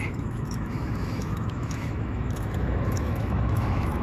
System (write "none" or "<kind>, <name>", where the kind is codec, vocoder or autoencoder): autoencoder, DAC-VAE